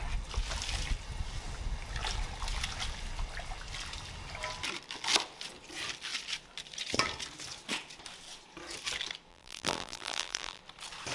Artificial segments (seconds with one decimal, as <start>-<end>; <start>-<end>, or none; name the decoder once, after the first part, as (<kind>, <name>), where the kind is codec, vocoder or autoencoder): 9.3-10.6 (vocoder, BigVGAN v2)